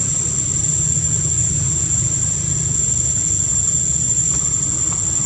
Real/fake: real